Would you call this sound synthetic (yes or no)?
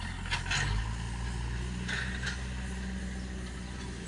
no